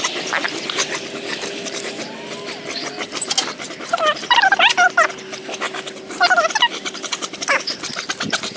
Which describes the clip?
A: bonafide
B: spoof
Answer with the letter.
A